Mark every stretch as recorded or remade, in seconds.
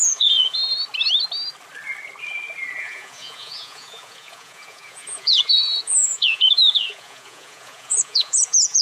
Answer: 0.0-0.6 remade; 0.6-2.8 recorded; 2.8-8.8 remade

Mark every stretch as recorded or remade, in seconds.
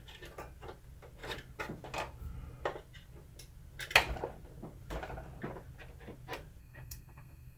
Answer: 0.0-6.6 recorded; 6.6-7.6 remade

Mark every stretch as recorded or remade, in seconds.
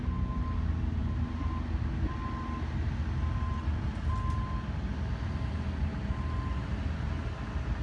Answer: 0.0-7.8 recorded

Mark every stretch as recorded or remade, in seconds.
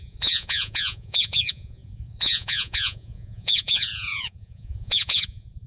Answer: 0.0-5.7 remade